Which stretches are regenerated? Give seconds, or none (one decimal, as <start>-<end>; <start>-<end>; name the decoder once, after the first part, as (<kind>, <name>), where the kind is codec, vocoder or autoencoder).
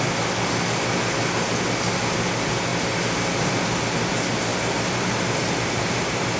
2.7-3.8 (vocoder, BigVGAN v2); 4.5-6.4